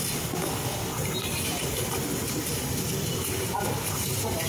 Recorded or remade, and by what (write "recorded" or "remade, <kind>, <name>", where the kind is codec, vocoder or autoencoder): recorded